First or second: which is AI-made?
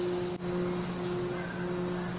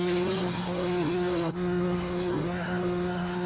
second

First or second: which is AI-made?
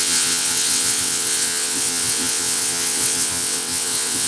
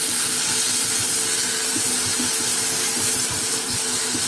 first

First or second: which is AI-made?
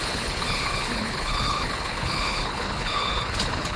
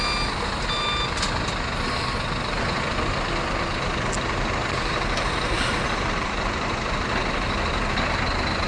first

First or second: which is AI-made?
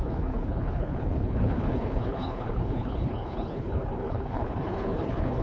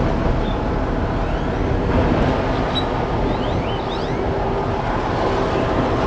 first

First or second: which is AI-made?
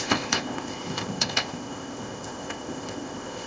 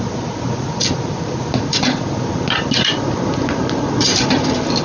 first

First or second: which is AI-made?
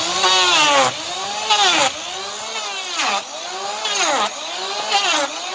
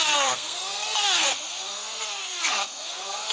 second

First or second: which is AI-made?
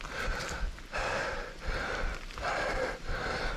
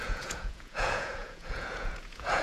second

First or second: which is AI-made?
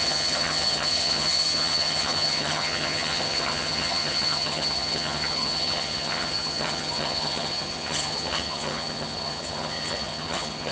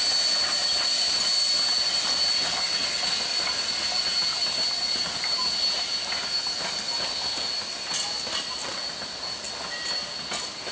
first